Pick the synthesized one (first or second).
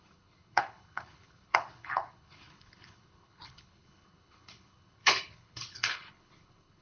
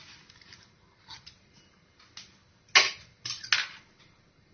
first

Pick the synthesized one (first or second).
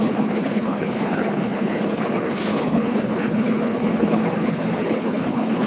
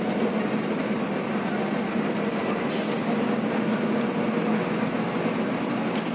first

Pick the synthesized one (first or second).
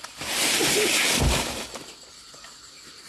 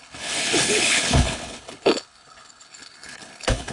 second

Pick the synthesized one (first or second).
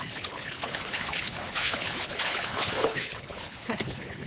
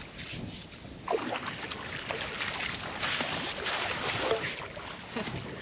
first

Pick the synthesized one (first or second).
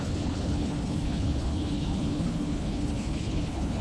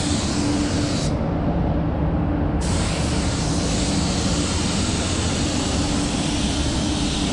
first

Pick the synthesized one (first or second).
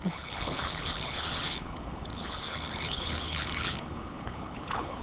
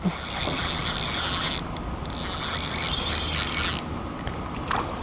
first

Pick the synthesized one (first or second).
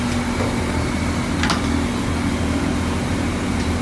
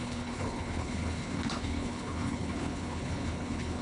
second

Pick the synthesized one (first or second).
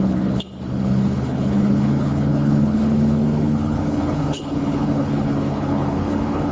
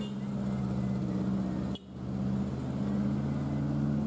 first